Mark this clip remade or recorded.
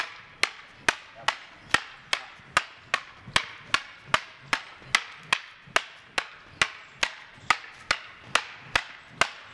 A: recorded